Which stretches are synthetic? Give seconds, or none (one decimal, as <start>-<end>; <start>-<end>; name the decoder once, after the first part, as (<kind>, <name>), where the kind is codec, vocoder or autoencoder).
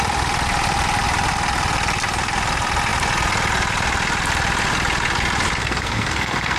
5.6-6.6 (codec, SNAC)